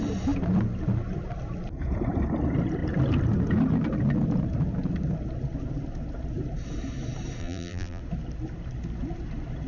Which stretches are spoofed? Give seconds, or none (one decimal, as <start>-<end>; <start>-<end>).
7.4-8.0